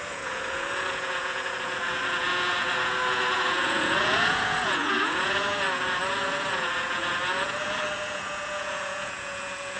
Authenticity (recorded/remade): remade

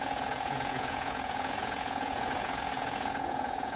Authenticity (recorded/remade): remade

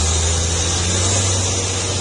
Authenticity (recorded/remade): recorded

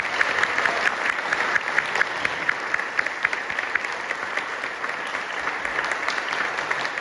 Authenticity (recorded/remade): recorded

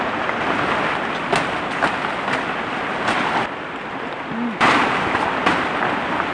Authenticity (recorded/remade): recorded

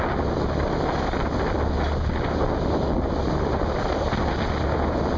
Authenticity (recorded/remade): recorded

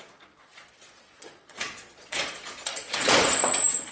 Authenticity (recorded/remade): remade